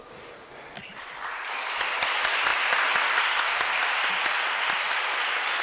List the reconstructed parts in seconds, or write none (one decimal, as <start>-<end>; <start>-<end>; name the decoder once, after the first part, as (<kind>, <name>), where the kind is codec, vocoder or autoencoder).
none